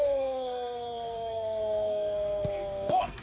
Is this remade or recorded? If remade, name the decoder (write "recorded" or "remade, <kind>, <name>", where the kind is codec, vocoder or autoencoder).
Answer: remade, codec, SNAC